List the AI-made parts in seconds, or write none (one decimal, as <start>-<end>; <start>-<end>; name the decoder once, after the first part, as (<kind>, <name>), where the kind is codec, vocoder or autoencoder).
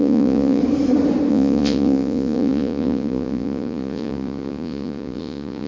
0.0-0.6 (vocoder, Vocos); 1.3-5.7